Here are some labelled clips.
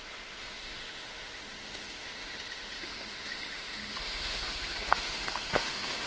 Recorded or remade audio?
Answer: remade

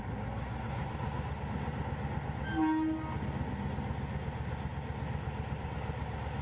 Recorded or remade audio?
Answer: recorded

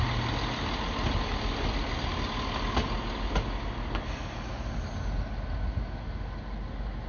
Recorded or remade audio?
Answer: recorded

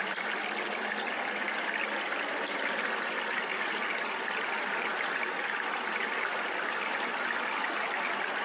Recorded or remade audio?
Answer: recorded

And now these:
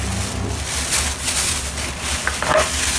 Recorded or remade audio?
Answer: recorded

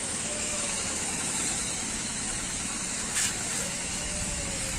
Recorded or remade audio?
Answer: remade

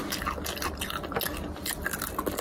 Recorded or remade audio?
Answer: recorded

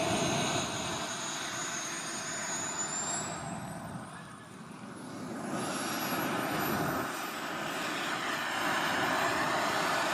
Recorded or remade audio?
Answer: recorded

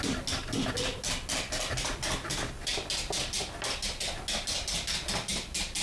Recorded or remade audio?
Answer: recorded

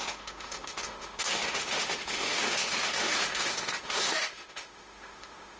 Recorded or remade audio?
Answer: remade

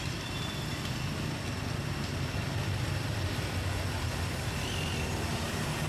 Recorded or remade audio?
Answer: recorded